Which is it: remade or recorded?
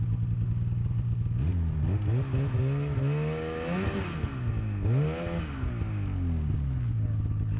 recorded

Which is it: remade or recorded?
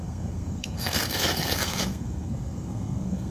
remade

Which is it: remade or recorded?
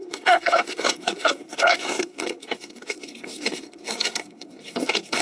remade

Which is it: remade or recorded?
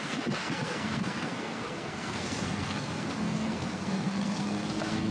remade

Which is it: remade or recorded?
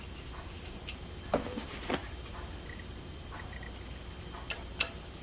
recorded